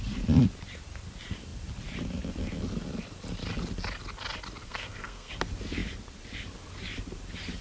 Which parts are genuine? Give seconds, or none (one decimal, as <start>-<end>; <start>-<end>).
0.0-4.6; 5.3-7.6